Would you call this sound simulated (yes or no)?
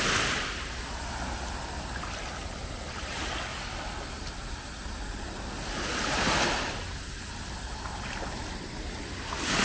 no